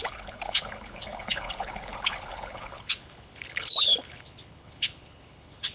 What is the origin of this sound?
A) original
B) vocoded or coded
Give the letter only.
B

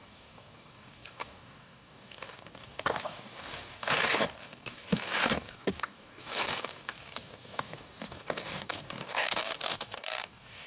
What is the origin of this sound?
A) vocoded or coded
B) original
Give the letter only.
A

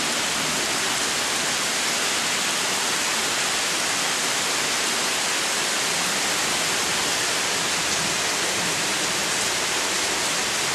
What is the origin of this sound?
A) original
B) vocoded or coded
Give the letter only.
A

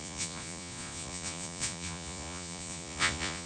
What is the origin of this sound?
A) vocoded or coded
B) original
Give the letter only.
A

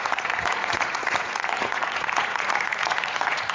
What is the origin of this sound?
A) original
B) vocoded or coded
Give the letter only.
B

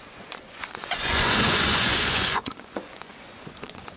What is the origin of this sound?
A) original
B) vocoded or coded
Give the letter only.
B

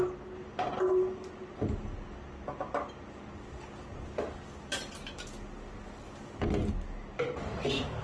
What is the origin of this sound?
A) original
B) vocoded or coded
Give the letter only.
A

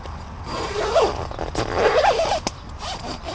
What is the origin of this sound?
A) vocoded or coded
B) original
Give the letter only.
B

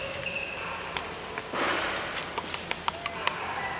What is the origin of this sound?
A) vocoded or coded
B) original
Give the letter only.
B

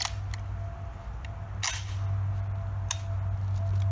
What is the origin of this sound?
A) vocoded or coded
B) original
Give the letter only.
B